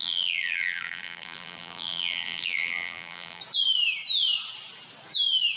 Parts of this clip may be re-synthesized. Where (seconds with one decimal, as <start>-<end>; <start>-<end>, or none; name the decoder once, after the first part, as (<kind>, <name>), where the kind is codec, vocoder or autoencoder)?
0.0-3.4 (vocoder, BigVGAN v2)